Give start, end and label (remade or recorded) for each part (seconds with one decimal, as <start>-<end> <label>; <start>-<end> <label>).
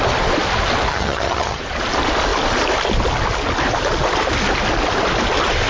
0.0-0.9 recorded; 0.9-1.6 remade; 1.6-5.7 recorded